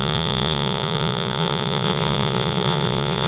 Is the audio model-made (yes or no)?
yes